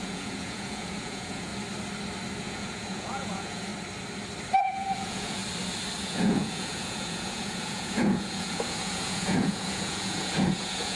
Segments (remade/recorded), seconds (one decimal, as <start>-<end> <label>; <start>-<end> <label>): 0.0-1.5 remade; 1.5-2.4 recorded; 2.4-3.7 remade; 3.7-4.6 recorded; 4.6-5.4 remade; 5.4-6.0 recorded; 6.0-11.0 remade